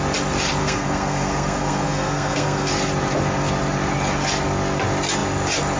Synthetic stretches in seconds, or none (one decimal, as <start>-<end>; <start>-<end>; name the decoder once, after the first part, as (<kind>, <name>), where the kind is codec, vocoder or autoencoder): 0.6-2.7 (codec, SNAC)